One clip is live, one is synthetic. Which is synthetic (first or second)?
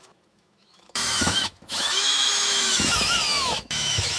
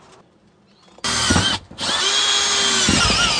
first